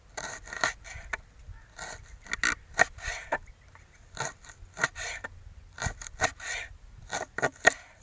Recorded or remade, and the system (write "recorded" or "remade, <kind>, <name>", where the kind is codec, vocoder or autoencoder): recorded